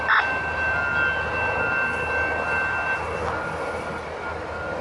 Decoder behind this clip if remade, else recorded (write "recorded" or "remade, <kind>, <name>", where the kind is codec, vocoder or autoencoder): recorded